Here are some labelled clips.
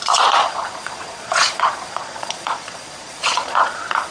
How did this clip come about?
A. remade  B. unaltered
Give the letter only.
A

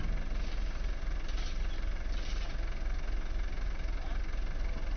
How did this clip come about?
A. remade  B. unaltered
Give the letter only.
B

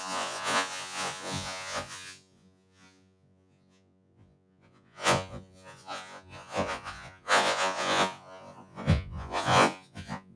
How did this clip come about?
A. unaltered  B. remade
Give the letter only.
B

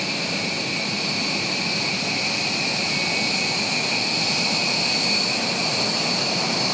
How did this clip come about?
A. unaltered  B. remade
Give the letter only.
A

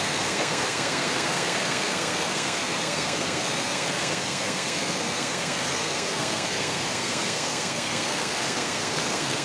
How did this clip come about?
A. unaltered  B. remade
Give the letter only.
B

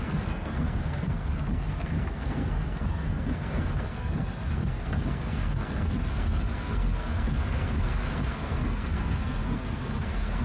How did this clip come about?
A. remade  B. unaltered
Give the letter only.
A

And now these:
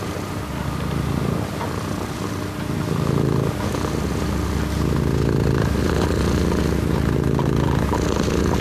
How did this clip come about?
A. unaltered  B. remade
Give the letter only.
A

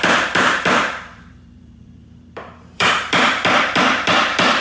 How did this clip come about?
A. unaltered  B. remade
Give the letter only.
B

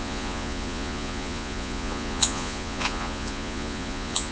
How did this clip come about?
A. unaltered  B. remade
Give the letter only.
B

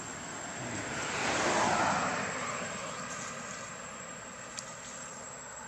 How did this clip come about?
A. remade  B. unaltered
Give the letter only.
B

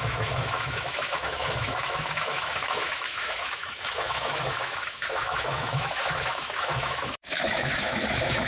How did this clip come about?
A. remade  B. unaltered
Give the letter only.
A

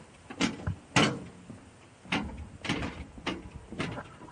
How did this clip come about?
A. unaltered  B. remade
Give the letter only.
A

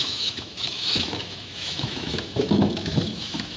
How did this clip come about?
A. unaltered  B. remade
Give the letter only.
B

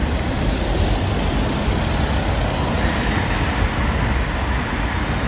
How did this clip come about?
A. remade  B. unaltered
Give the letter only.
B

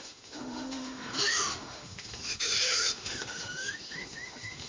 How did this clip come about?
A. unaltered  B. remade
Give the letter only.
B